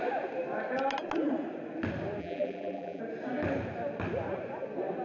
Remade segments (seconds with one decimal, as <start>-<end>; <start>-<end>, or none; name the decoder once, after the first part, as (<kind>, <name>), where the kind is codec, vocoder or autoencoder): 2.2-3.0 (vocoder, BigVGAN v2)